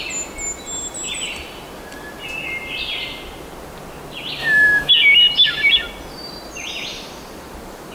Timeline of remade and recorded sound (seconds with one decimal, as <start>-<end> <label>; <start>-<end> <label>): 0.0-4.4 recorded; 4.4-4.9 remade; 4.9-7.9 recorded

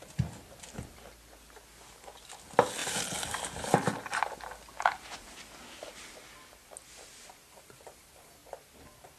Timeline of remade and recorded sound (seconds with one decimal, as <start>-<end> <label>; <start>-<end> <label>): 0.0-9.2 recorded

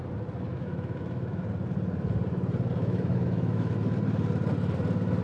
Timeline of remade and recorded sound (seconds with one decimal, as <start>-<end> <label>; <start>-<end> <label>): 0.0-0.5 recorded; 0.5-1.4 remade; 1.4-2.8 recorded; 2.8-3.7 remade; 3.7-5.2 recorded

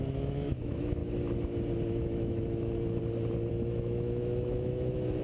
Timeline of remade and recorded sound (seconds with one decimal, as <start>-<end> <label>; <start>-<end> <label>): 0.0-1.0 remade; 1.0-2.0 recorded; 2.0-3.0 remade; 3.0-3.5 recorded; 3.5-5.2 remade

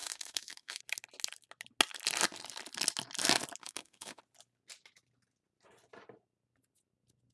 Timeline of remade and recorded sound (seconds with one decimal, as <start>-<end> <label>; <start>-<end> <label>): 0.0-0.8 remade; 0.8-3.6 recorded; 3.6-4.2 remade; 4.2-7.3 recorded

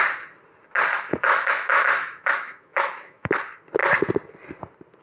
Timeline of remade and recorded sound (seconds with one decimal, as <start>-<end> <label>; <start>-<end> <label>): 0.0-0.9 recorded; 0.9-3.3 remade; 3.3-5.0 recorded

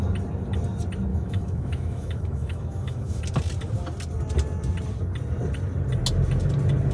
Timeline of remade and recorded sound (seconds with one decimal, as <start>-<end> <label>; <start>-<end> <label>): 0.0-1.1 recorded; 1.1-3.2 remade; 3.2-6.9 recorded